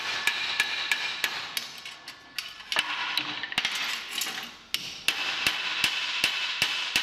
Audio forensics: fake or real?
real